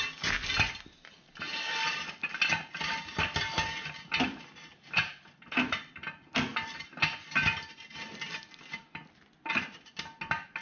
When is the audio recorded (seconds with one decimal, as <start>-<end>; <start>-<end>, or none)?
0.0-10.6